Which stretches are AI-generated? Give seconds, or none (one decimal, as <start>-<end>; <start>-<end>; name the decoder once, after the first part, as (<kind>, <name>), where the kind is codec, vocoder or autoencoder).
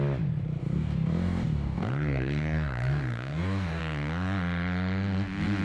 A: 0.6-3.8 (codec, DAC)